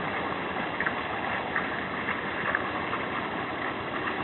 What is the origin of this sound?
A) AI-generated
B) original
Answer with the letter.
B